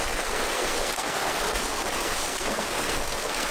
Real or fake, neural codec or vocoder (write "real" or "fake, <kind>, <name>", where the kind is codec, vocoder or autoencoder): fake, codec, SNAC